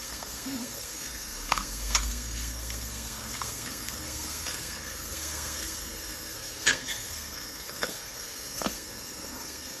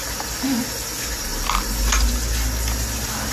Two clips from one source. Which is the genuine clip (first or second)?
second